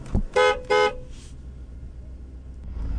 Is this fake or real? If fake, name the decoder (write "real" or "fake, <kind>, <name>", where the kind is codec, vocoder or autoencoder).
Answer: real